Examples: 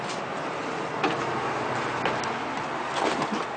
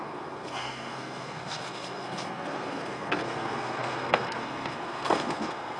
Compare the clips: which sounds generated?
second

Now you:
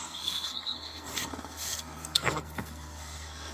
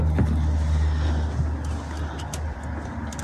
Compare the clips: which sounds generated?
first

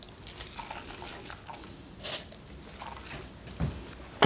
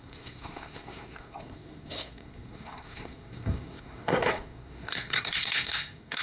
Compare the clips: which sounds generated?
second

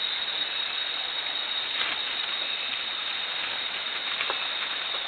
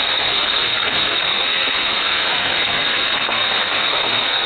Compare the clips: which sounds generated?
second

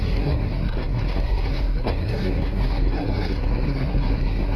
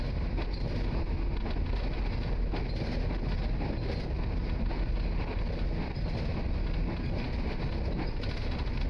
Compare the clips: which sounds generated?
first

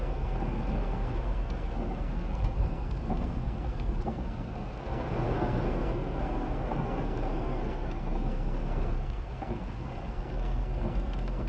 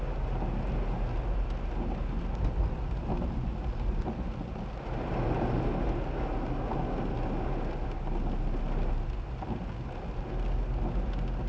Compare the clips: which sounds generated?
first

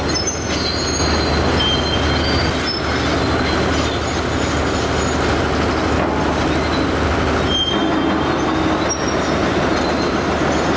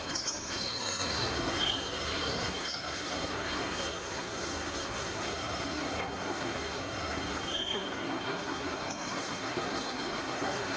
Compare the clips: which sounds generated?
second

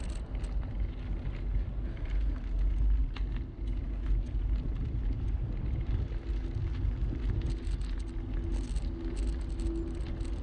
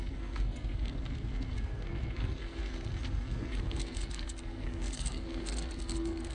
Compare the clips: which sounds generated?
second